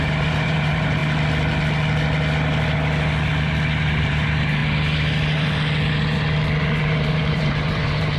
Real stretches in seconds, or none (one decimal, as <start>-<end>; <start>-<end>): 1.0-4.0; 4.6-6.8